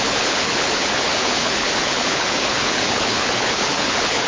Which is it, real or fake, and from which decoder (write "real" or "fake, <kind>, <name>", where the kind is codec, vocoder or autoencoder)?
fake, codec, HILCodec